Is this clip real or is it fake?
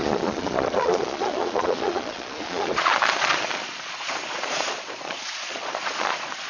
fake